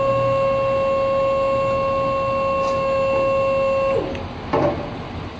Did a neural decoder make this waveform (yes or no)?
no